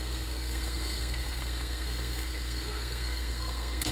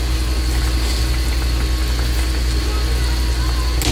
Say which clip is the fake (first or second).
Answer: first